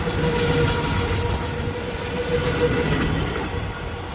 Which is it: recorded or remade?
recorded